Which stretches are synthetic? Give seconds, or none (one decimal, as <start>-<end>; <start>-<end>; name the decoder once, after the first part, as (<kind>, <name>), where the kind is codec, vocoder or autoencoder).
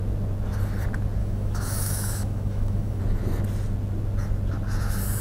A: 1.2-3.0 (autoencoder, DAC-VAE)